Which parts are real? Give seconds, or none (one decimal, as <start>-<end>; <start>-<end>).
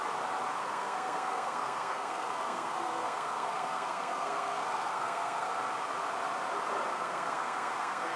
0.0-0.6; 5.5-6.9